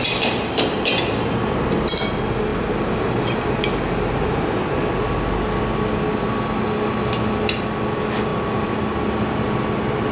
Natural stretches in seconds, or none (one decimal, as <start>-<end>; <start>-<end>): 0.0-10.1